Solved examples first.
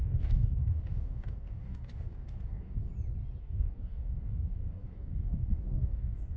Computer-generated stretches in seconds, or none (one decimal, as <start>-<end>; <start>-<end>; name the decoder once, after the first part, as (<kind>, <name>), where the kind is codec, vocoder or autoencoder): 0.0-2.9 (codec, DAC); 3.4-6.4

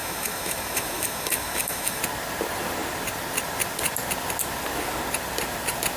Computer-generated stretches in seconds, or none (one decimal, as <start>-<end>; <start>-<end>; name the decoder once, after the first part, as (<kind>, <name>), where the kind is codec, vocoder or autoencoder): 0.0-2.0 (autoencoder, DAC-VAE)

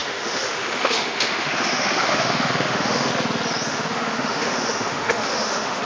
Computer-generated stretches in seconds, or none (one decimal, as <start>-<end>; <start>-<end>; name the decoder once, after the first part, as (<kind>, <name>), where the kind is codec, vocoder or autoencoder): 0.0-3.1 (autoencoder, DAC-VAE); 3.7-5.8